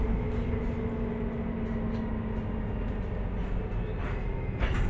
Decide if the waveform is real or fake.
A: real